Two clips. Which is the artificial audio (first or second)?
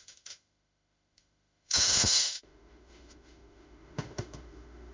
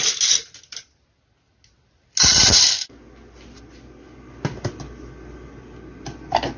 first